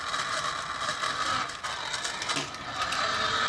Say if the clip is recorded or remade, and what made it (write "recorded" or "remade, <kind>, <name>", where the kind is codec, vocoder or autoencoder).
recorded